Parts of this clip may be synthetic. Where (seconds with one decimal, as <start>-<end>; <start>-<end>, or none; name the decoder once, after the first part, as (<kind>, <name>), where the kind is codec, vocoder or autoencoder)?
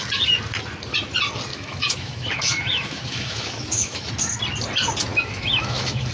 1.5-4.1 (autoencoder, DAC-VAE); 5.1-6.1